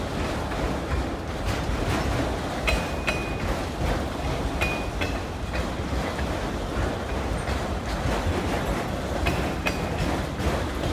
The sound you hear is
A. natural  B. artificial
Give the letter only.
A